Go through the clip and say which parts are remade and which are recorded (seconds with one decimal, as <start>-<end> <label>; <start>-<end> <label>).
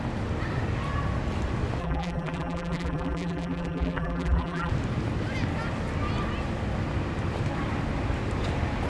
0.0-1.8 recorded; 1.8-4.7 remade; 4.7-8.9 recorded